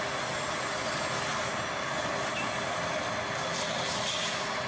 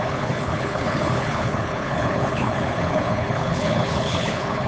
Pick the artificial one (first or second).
second